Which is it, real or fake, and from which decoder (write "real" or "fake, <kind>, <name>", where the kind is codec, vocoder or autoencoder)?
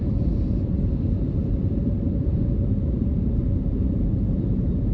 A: fake, vocoder, BigVGAN v2